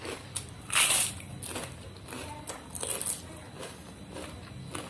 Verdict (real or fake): real